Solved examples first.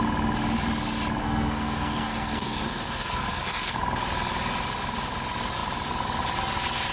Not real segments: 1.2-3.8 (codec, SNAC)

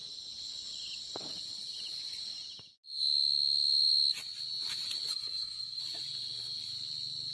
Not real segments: 5.1-5.8 (codec, SNAC)

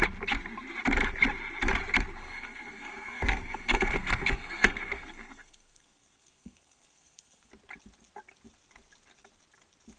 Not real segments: 2.2-7.5 (codec, SNAC)

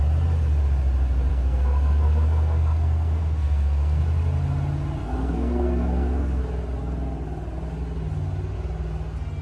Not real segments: 1.3-4.0 (codec, SNAC); 5.0-6.4